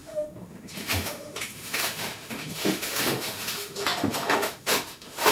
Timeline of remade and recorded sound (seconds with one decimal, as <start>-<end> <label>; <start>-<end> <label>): 0.0-5.3 remade